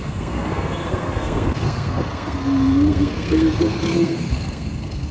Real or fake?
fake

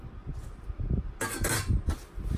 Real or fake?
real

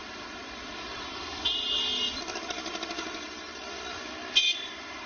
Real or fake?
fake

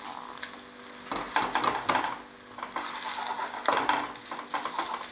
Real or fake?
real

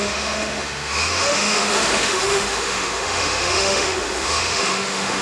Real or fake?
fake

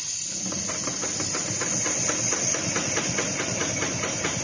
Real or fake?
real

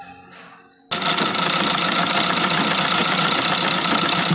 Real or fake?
real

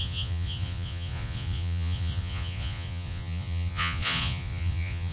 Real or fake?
fake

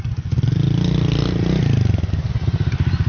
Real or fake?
real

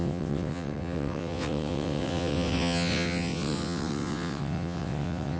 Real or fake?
fake